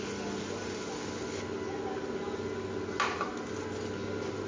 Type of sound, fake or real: real